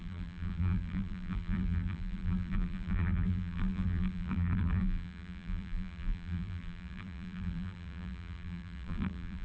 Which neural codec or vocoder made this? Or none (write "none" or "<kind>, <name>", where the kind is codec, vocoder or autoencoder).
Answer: vocoder, BigVGAN v2